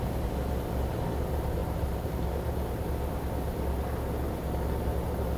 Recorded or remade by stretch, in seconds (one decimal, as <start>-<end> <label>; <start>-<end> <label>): 0.0-5.4 recorded